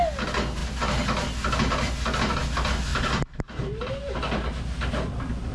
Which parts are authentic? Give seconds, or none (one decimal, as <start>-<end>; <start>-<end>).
0.0-5.5

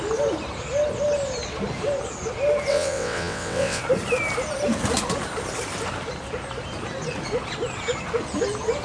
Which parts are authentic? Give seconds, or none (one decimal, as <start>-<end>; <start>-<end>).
0.0-2.7; 3.8-8.8

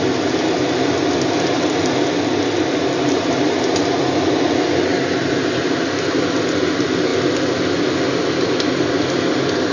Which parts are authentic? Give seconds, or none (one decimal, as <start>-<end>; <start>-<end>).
0.0-4.9; 5.4-9.7

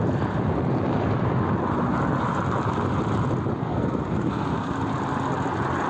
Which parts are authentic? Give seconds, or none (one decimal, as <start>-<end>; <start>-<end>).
0.0-3.6; 4.7-5.9

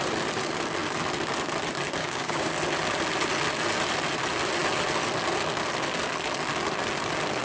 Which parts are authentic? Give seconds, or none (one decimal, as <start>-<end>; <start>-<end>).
0.0-2.0; 2.5-7.4

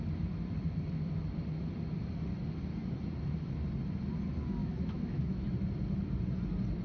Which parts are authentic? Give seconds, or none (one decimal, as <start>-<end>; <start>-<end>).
0.0-4.6; 5.4-6.8

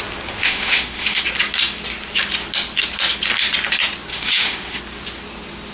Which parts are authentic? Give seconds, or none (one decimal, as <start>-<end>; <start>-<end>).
0.0-0.4; 1.2-4.1; 4.8-5.7